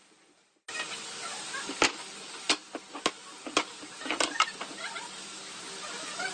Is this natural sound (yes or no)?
yes